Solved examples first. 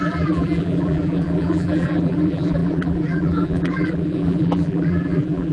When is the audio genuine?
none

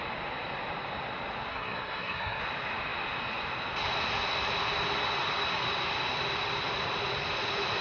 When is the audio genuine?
0.0-1.5; 2.4-7.8

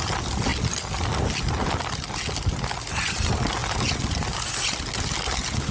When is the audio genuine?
0.0-5.7

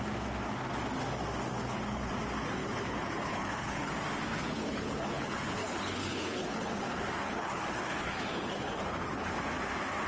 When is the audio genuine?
0.0-1.5; 2.1-2.6; 3.9-4.3; 9.3-10.1